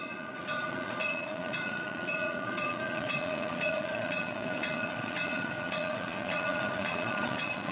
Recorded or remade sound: remade